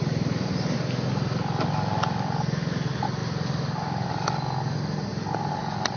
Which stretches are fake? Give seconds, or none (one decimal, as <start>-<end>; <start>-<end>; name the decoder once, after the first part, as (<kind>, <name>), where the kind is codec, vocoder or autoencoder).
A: 0.0-0.8 (vocoder, BigVGAN v2); 3.2-4.1; 5.1-5.6